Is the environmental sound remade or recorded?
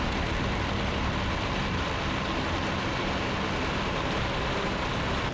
recorded